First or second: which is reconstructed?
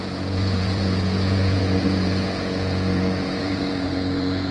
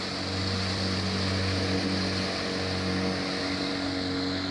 first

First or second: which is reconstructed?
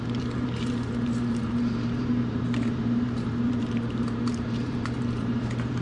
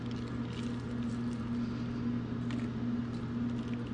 first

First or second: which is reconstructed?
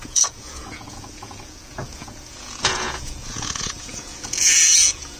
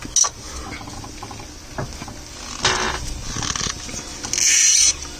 first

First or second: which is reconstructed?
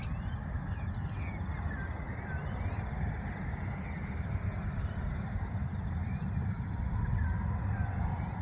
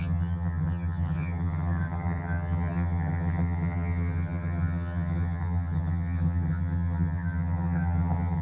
second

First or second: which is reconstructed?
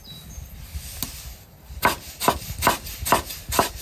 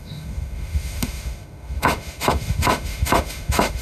second